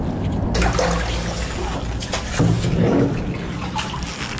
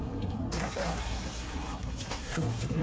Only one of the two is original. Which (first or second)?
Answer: first